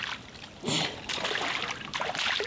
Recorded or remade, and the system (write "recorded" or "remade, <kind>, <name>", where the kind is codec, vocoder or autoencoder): recorded